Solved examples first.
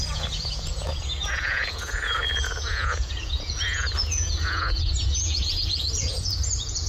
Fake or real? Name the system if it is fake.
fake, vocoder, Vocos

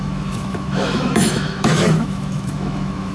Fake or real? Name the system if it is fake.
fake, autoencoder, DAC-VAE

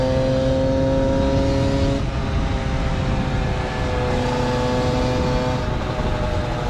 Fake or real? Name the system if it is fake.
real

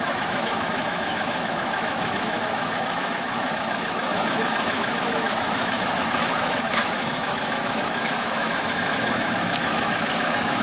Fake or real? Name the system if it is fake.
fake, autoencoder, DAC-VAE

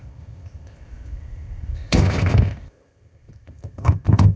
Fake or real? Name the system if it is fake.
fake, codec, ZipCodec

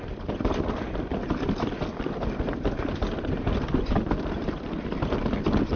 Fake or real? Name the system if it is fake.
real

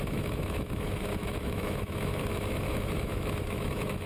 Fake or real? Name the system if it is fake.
fake, autoencoder, DAC-VAE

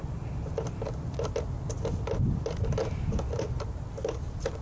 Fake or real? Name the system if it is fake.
real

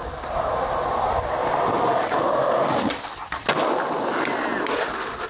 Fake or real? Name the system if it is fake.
real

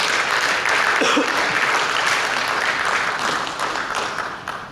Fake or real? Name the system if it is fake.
real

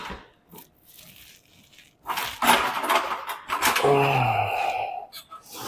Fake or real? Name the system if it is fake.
real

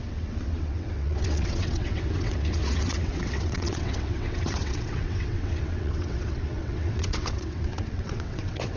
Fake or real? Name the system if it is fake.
fake, vocoder, WaveNeXt